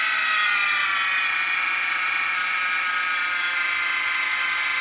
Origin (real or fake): real